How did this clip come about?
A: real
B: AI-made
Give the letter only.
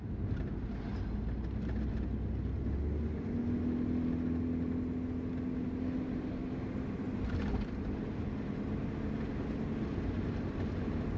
A